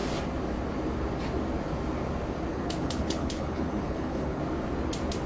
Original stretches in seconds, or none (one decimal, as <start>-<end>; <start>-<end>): 0.0-2.5; 4.4-5.3